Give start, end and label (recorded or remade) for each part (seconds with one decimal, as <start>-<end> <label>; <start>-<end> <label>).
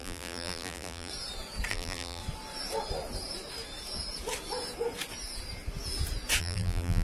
0.0-1.1 remade; 1.1-1.7 recorded; 1.7-2.2 remade; 2.2-6.4 recorded; 6.4-7.0 remade